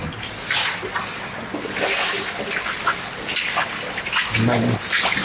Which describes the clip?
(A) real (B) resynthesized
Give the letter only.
A